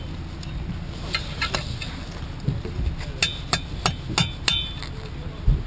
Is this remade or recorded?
recorded